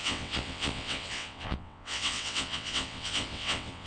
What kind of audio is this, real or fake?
fake